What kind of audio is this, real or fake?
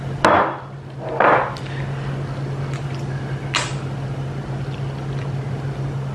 real